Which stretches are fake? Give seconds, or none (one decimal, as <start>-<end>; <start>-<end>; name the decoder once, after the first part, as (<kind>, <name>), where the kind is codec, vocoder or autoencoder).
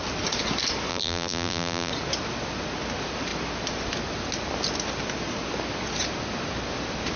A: 0.9-1.9 (vocoder, BigVGAN v2)